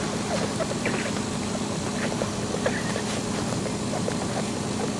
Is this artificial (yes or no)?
no